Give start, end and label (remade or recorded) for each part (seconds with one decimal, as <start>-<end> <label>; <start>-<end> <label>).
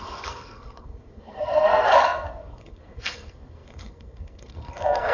0.0-5.1 remade